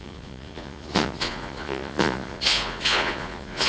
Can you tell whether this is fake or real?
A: fake